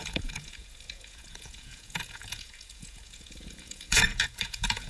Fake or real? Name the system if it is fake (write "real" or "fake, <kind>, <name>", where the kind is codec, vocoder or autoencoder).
fake, vocoder, Vocos